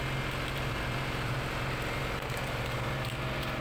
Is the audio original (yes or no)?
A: yes